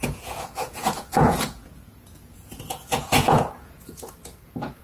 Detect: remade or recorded remade